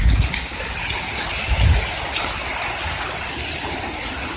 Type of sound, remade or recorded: recorded